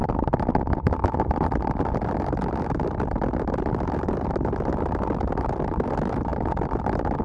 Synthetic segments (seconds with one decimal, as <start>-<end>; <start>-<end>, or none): none